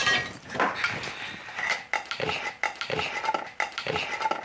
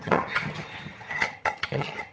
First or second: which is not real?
second